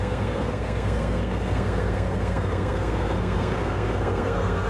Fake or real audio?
fake